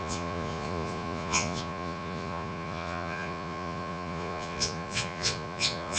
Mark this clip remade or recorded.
remade